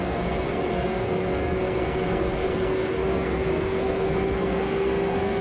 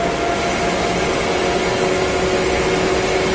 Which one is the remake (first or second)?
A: first